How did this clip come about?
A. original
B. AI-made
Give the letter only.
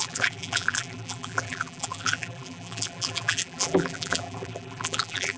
B